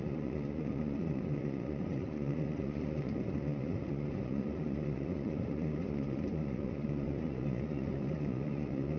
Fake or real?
fake